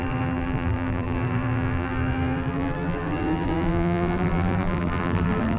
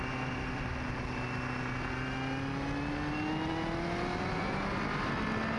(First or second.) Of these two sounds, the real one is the second